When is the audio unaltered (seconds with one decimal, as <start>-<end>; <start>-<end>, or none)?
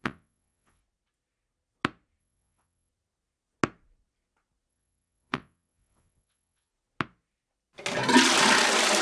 0.8-2.2; 2.9-4.7; 6.7-9.0